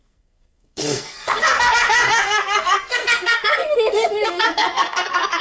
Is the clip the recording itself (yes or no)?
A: no